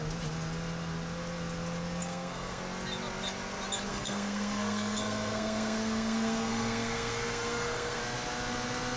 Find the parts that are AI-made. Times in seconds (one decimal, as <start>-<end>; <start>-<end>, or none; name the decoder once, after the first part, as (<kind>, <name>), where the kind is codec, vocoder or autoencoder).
2.0-2.6 (codec, SNAC); 3.9-8.0